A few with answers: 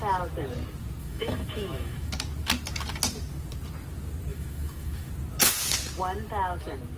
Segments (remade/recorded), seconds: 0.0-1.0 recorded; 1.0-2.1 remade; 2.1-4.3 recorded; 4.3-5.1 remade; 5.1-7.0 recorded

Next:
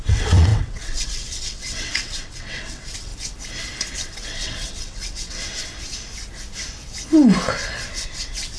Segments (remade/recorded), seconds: 0.0-3.1 remade; 3.1-3.9 recorded; 3.9-5.5 remade; 5.5-7.9 recorded; 7.9-8.6 remade

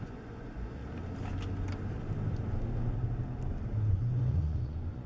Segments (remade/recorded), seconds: 0.0-0.8 remade; 0.8-3.9 recorded; 3.9-5.1 remade

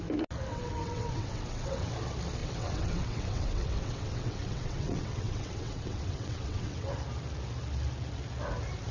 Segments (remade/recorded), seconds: 0.0-0.5 recorded; 0.5-1.9 remade; 1.9-2.4 recorded; 2.4-6.9 remade; 6.9-8.9 recorded

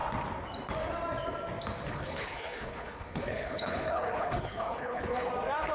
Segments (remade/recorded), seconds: 0.0-1.9 recorded; 1.9-5.3 remade; 5.3-5.7 recorded

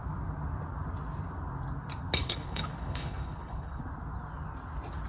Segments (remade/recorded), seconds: 0.0-2.2 recorded; 2.2-3.8 remade; 3.8-5.1 recorded

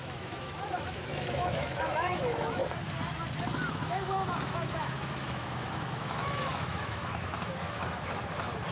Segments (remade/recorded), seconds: 0.0-2.6 remade; 2.6-3.7 recorded; 3.7-8.7 remade

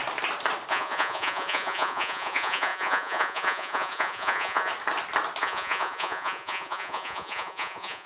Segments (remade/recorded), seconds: 0.0-0.7 recorded; 0.7-4.7 remade; 4.7-5.4 recorded; 5.4-8.1 remade